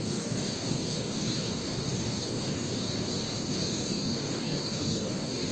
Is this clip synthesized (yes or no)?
yes